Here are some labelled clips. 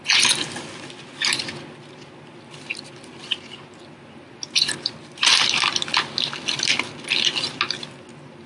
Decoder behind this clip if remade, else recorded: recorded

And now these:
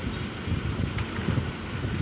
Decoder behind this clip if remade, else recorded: recorded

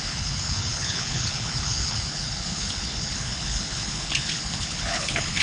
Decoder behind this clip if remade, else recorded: remade, codec, HILCodec